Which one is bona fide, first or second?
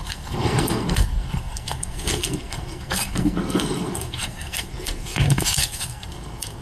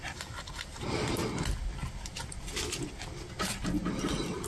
second